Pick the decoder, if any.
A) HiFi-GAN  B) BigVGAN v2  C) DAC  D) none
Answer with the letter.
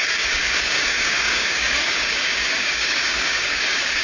C